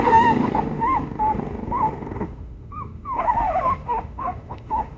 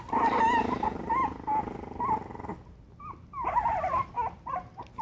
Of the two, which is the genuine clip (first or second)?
second